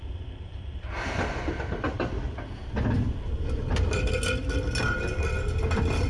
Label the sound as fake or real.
real